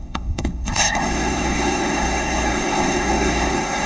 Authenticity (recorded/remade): remade